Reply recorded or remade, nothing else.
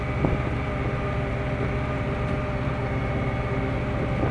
recorded